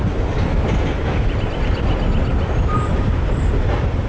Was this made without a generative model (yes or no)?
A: yes